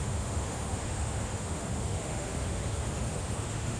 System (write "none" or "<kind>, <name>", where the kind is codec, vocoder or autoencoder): autoencoder, DAC-VAE